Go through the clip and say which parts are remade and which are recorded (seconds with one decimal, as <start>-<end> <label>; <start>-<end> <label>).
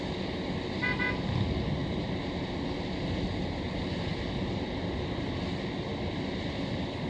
0.0-7.1 recorded